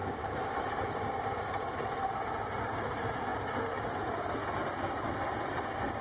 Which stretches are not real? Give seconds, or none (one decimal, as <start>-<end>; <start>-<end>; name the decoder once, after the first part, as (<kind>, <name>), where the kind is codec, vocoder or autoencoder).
0.0-6.0 (vocoder, BigVGAN v2)